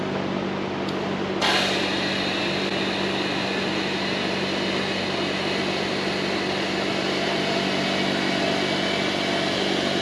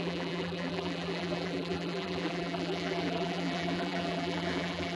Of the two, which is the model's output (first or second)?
second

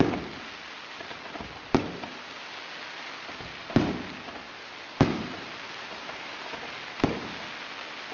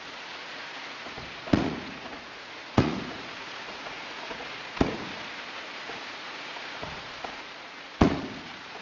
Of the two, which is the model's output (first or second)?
second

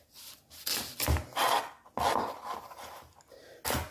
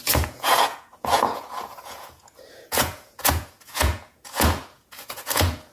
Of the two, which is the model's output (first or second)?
second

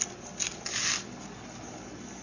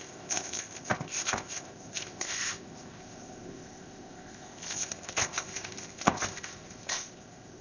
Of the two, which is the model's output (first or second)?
second